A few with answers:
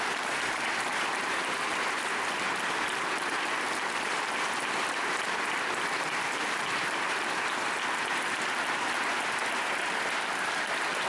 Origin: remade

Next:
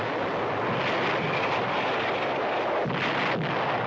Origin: recorded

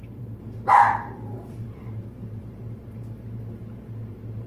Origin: remade